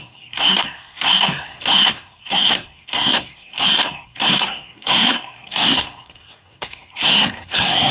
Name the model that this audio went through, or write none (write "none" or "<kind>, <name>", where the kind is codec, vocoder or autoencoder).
codec, SNAC